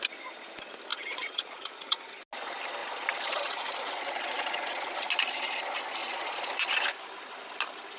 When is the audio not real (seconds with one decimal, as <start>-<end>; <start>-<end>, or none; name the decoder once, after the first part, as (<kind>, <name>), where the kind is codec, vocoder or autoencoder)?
0.9-2.1 (vocoder, Vocos); 2.8-5.1; 6.0-6.5